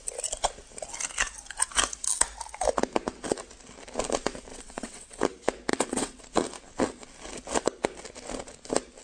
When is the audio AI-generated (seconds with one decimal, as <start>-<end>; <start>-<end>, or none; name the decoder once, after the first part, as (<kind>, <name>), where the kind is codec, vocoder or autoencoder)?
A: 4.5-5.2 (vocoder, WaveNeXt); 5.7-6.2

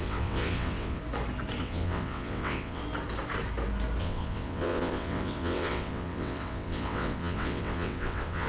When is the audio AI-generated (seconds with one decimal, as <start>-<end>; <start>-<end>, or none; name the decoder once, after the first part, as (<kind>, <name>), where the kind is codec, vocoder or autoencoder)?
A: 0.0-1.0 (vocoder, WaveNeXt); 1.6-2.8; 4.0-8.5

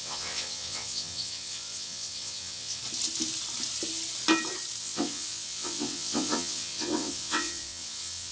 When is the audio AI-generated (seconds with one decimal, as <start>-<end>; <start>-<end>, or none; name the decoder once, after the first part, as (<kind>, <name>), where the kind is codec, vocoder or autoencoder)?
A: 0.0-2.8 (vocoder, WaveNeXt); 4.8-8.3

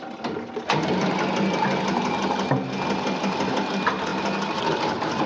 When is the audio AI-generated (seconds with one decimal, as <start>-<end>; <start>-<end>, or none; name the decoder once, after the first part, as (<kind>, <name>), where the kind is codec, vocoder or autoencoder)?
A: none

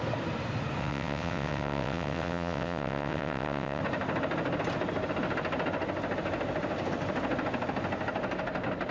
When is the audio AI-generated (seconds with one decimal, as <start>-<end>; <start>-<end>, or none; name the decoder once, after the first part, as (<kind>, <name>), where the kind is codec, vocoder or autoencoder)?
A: 0.8-3.8 (vocoder, WaveNeXt)

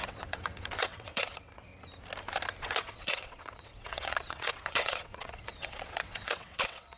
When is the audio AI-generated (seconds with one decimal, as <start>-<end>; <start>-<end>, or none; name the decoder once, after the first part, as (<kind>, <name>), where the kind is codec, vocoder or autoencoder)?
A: 0.0-1.7 (vocoder, WaveNeXt); 2.6-7.0

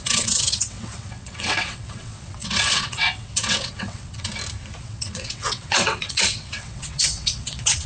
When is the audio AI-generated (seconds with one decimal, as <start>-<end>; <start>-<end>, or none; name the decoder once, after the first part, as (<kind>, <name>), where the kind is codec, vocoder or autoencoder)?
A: 0.0-4.3 (vocoder, WaveNeXt); 4.8-7.9